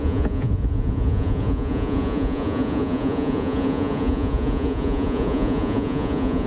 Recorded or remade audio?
remade